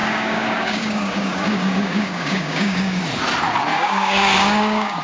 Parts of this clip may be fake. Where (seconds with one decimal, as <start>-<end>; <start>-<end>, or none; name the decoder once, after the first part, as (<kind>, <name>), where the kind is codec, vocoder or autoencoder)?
0.0-3.0 (codec, DAC); 3.7-5.0